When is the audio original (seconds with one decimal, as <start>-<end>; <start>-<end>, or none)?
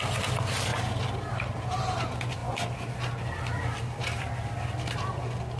0.0-0.7; 1.3-2.4; 4.8-5.6